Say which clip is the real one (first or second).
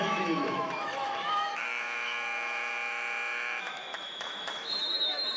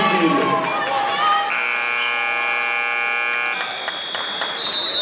second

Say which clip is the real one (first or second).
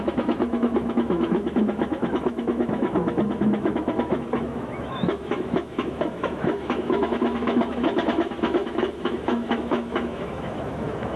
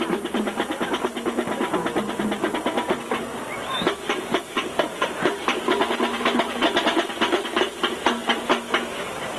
second